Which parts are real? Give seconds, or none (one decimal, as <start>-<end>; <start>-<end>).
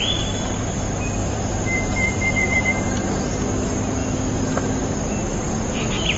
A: 0.0-1.2; 2.7-6.2